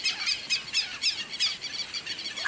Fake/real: real